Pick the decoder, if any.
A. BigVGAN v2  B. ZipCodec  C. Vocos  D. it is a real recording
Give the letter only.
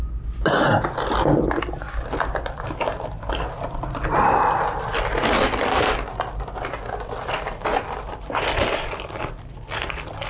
D